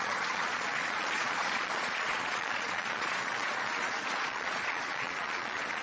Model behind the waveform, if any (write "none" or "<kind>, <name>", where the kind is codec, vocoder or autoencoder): vocoder, Vocos